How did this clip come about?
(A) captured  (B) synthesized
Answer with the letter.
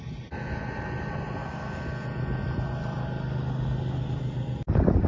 A